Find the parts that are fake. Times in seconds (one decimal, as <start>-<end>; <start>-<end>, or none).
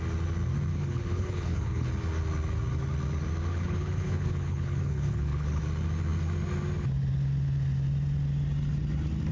0.7-1.9; 3.5-5.6